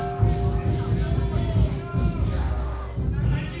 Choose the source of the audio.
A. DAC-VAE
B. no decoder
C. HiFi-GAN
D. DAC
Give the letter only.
B